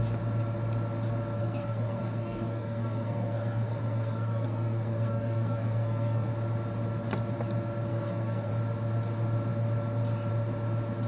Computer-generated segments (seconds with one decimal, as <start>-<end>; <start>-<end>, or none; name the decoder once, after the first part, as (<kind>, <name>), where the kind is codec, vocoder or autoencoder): 1.4-6.3 (codec, SNAC); 7.9-8.5

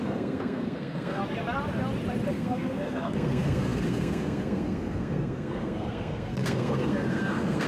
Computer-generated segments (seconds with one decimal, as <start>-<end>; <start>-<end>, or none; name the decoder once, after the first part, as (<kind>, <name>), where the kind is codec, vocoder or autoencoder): 0.0-1.2 (codec, SNAC); 2.3-7.7

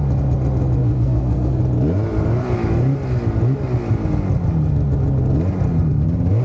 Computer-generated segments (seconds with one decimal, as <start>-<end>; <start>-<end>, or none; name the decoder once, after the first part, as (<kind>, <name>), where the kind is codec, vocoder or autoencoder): 0.8-1.6 (codec, SNAC)

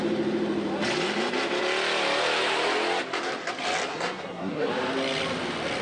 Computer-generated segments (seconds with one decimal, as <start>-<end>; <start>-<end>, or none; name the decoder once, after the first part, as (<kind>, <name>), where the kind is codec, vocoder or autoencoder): 3.9-4.7 (codec, SNAC)

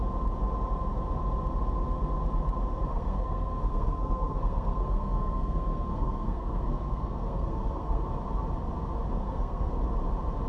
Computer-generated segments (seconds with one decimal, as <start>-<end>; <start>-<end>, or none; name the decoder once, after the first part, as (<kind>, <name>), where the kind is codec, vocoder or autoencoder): 2.9-8.0 (codec, SNAC); 9.2-9.7

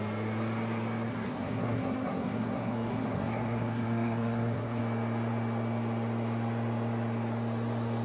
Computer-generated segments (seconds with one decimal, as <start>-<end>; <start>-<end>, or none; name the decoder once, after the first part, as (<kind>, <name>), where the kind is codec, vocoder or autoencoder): 1.1-4.8 (codec, SNAC)

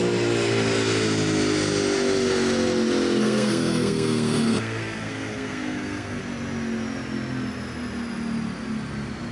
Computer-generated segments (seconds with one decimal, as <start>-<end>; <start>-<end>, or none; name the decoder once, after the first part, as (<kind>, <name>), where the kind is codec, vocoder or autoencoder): 3.2-6.2 (codec, SNAC)